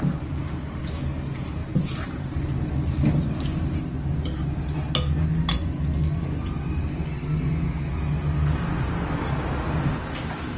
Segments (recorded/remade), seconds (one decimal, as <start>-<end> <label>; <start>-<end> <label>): 0.0-1.6 recorded; 1.6-2.7 remade; 2.7-10.6 recorded